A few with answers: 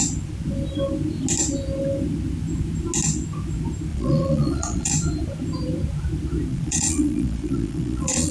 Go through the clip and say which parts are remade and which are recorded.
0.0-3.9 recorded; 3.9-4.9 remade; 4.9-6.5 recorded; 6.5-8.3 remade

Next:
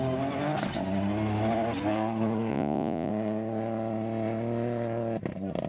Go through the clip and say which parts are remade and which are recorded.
0.0-2.5 recorded; 2.5-3.1 remade; 3.1-5.7 recorded

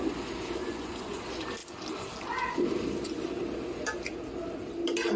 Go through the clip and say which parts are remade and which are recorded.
0.0-0.6 recorded; 0.6-1.2 remade; 1.2-5.2 recorded

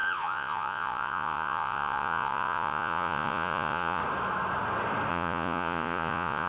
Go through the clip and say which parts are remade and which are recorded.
0.0-4.0 remade; 4.0-5.1 recorded; 5.1-6.5 remade

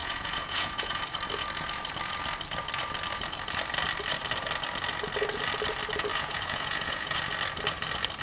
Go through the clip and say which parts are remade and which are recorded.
0.0-1.0 remade; 1.0-6.1 recorded; 6.1-7.2 remade; 7.2-8.2 recorded